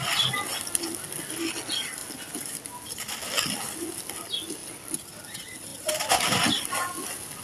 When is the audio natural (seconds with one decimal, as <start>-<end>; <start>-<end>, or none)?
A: 0.0-7.4